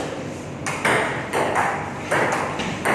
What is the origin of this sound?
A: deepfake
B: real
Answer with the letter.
B